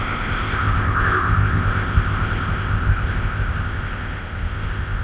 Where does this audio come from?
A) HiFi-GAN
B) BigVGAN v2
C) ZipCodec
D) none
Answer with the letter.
C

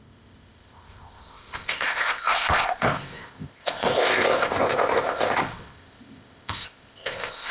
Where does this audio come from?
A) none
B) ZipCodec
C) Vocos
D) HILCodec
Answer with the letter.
B